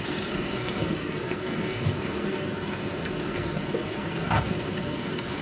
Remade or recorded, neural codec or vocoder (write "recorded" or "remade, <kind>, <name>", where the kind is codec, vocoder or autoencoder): remade, codec, SNAC